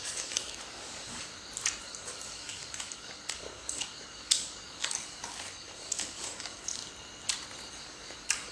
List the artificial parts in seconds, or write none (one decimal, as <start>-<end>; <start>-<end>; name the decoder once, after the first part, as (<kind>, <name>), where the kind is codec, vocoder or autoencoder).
0.0-1.3 (codec, DAC); 1.8-6.8; 7.7-8.5